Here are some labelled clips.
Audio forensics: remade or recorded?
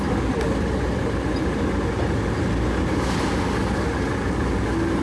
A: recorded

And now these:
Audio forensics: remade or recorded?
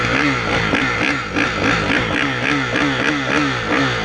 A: recorded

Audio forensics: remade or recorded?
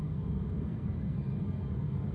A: remade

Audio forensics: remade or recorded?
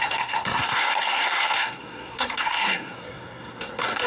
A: remade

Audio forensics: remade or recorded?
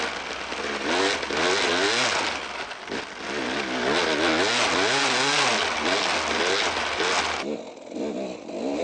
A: recorded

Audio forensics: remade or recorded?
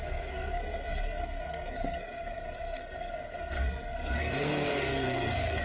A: remade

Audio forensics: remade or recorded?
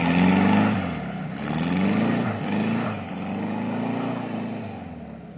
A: recorded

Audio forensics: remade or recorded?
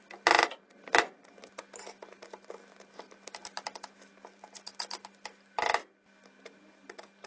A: recorded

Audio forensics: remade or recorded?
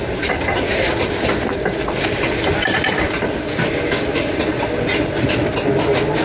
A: recorded